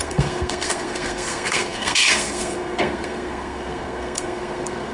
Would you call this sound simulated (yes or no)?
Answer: yes